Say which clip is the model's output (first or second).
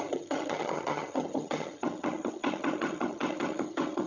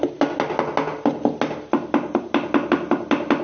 first